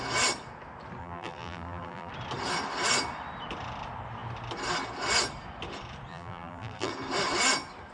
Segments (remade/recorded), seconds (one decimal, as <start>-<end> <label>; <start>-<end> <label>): 0.0-1.0 recorded; 1.0-2.1 remade; 2.1-6.1 recorded; 6.1-6.9 remade; 6.9-7.9 recorded